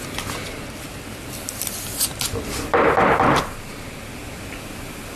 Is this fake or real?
real